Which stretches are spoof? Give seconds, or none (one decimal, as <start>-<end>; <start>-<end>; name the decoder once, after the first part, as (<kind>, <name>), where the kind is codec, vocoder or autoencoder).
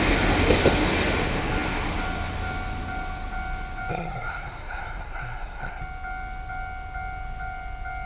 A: 3.9-5.8 (codec, SNAC)